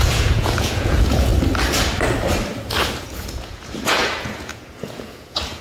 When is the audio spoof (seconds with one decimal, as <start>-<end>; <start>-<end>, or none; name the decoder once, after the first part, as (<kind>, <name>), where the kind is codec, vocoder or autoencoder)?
0.0-1.3 (vocoder, Vocos); 3.0-5.6